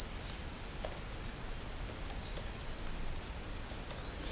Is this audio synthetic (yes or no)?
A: no